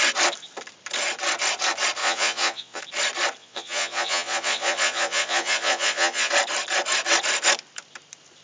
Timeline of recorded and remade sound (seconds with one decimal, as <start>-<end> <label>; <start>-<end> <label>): 0.0-2.0 recorded; 2.0-2.8 remade; 2.8-3.4 recorded; 3.4-6.3 remade; 6.3-8.4 recorded